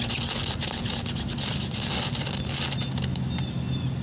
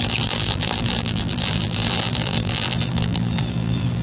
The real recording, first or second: first